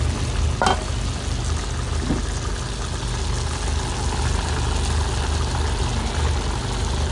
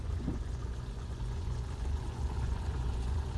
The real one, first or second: first